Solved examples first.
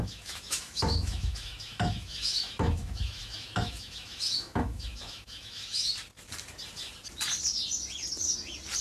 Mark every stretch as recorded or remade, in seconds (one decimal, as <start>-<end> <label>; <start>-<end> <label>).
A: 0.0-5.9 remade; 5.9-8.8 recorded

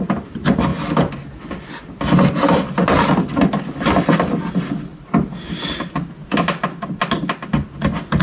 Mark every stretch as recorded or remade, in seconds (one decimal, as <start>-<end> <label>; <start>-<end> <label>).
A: 0.0-8.2 recorded

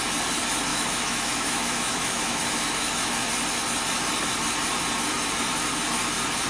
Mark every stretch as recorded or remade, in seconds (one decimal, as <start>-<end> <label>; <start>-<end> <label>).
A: 0.0-0.7 recorded; 0.7-3.3 remade; 3.3-6.5 recorded